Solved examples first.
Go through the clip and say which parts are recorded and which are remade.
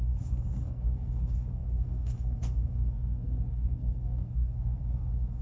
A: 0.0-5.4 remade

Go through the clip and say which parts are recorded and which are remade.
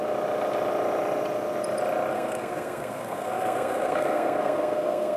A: 0.0-2.1 recorded; 2.1-5.2 remade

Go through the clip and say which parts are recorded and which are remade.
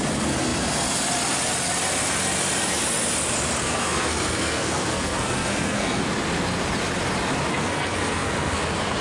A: 0.0-3.6 recorded; 3.6-6.0 remade; 6.0-7.5 recorded; 7.5-8.6 remade; 8.6-9.0 recorded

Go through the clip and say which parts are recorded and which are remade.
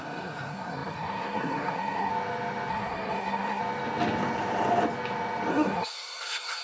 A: 0.0-2.1 remade; 2.1-2.7 recorded; 2.7-3.6 remade; 3.6-5.5 recorded; 5.5-6.6 remade